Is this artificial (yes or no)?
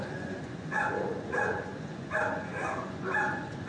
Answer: yes